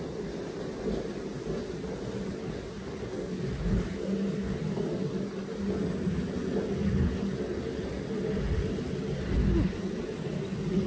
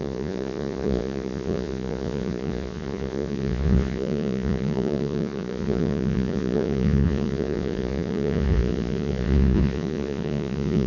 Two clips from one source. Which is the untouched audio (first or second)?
first